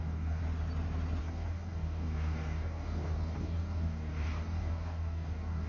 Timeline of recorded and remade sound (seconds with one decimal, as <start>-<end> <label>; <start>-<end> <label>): 0.0-0.4 remade; 0.4-1.2 recorded; 1.2-5.7 remade